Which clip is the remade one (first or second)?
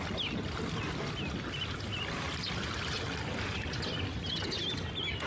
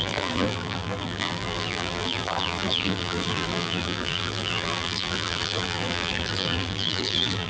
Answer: second